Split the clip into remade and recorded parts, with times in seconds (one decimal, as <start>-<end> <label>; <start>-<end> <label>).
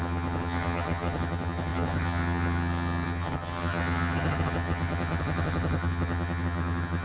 0.0-7.0 remade